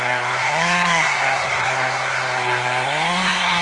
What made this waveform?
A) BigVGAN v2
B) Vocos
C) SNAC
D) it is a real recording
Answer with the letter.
C